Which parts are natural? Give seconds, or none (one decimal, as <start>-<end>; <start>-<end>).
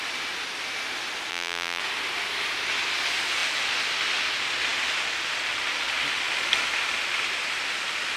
0.0-1.3; 1.8-8.2